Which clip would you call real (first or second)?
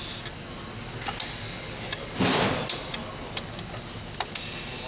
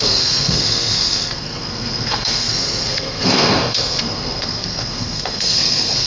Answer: first